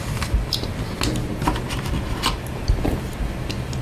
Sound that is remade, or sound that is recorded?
recorded